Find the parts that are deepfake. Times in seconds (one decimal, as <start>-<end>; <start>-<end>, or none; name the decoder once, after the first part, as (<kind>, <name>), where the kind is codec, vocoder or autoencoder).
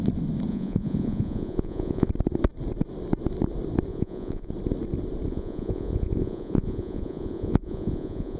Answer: 0.5-2.1 (vocoder, Vocos); 3.9-4.5; 5.3-8.4